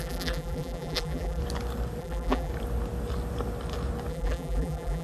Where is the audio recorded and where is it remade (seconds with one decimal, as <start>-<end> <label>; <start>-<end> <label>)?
0.0-1.4 remade; 1.4-2.0 recorded; 2.0-2.5 remade; 2.5-4.1 recorded; 4.1-5.0 remade